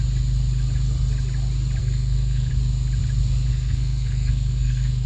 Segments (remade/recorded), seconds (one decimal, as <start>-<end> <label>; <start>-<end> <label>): 0.0-1.8 recorded; 1.8-2.5 remade; 2.5-3.5 recorded; 3.5-5.1 remade